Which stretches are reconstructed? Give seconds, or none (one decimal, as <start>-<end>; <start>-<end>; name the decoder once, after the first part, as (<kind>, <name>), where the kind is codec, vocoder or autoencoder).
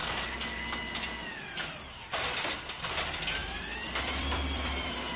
3.4-5.2 (vocoder, BigVGAN v2)